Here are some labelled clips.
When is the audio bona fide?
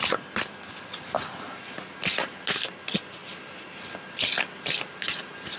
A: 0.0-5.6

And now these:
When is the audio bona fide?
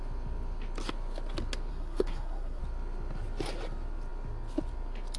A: 0.0-1.7; 2.6-5.2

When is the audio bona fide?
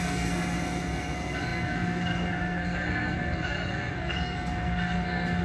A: none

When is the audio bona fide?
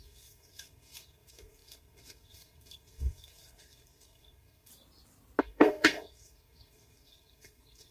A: 4.7-5.4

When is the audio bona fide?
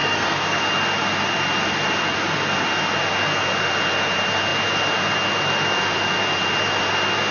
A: 0.6-7.3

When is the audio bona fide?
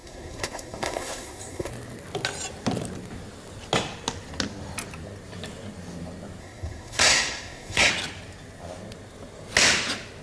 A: 1.7-6.4; 7.9-10.2